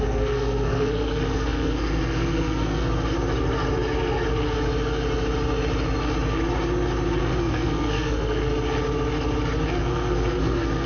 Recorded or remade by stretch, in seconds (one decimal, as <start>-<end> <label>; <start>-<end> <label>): 0.0-2.8 remade; 2.8-7.2 recorded; 7.2-8.5 remade; 8.5-9.8 recorded; 9.8-10.9 remade